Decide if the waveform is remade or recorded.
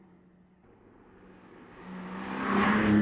recorded